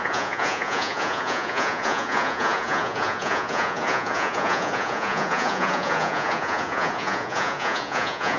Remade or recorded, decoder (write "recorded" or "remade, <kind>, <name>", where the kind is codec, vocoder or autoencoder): remade, vocoder, Vocos